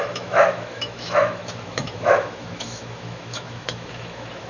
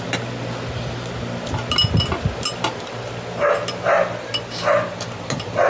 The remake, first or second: first